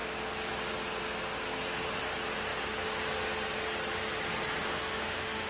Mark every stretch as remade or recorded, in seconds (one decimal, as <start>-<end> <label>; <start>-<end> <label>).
0.0-4.8 recorded; 4.8-5.5 remade